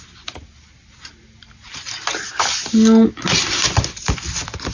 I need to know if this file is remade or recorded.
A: recorded